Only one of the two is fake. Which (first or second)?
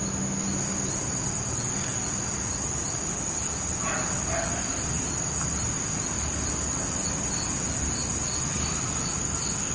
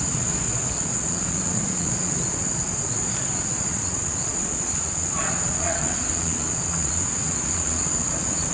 second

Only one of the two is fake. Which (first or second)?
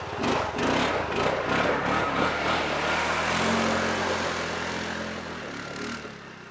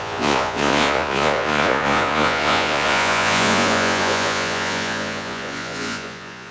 second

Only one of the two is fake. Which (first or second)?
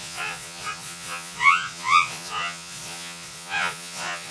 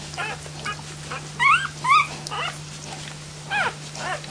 first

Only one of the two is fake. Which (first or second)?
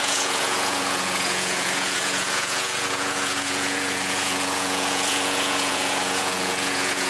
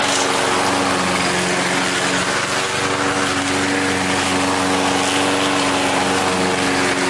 first